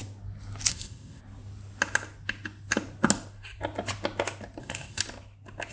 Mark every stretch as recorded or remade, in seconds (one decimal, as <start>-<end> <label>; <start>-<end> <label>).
0.0-0.7 recorded; 0.7-1.2 remade; 1.2-4.6 recorded; 4.6-5.0 remade; 5.0-5.7 recorded